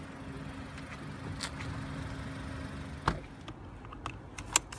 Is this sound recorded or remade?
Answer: recorded